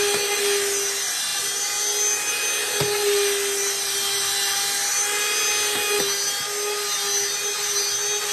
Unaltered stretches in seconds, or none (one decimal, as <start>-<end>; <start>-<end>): 0.0-8.3